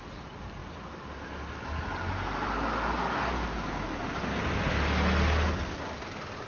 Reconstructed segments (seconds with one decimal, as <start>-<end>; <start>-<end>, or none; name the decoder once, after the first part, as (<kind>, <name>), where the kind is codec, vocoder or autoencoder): none